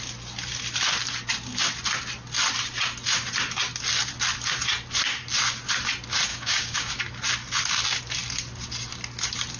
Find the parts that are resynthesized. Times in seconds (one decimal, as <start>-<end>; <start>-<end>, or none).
6.3-6.9